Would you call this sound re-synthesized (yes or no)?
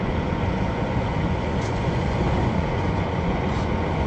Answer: yes